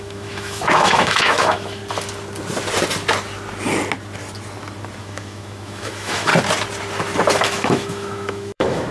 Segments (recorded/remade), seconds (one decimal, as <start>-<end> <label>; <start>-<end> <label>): 0.0-1.8 remade; 1.8-5.0 recorded; 5.0-6.3 remade; 6.3-7.4 recorded; 7.4-8.9 remade